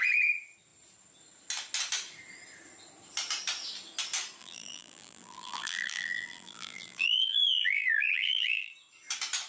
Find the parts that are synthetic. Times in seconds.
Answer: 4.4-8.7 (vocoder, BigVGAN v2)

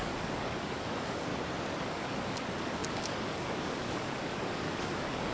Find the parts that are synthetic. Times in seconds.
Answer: 0.0-1.3 (codec, DAC); 1.8-5.3

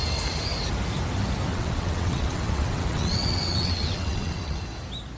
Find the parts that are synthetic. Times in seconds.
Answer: 1.5-4.6 (vocoder, WaveNeXt)

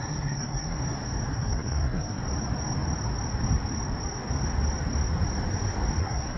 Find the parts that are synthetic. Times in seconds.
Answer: 0.0-0.8 (codec, SNAC); 1.3-2.2; 6.0-6.4